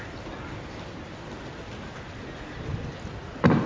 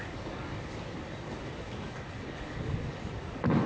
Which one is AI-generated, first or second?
second